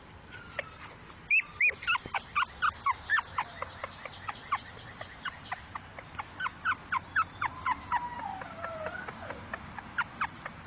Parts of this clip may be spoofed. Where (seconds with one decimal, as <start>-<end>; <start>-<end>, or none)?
none